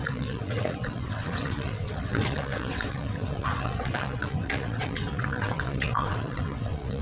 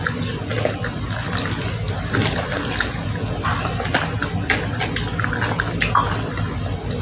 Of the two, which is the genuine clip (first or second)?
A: second